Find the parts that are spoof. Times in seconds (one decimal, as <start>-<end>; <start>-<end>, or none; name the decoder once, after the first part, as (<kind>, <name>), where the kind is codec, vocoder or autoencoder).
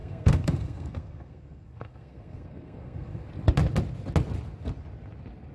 0.0-3.3 (codec, SNAC)